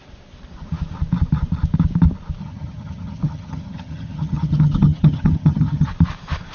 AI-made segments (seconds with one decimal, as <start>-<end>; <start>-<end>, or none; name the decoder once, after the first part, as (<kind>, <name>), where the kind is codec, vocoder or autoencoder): 2.4-5.9 (vocoder, HiFi-GAN)